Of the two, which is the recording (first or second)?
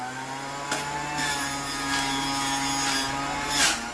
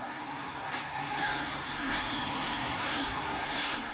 first